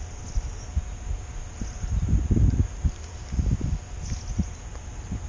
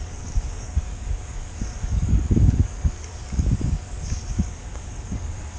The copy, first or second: second